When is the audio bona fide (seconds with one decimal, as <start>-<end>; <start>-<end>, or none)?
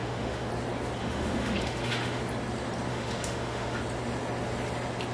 0.5-1.0; 2.2-2.9; 3.8-5.1